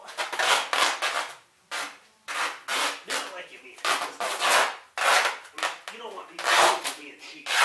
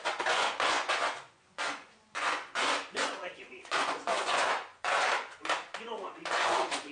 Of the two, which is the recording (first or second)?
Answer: first